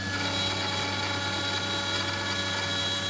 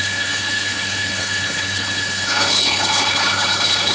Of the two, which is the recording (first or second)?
first